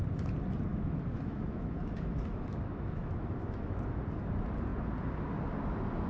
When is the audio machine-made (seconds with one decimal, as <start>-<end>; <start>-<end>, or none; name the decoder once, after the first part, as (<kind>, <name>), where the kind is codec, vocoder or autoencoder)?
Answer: 0.7-4.0 (autoencoder, DAC-VAE)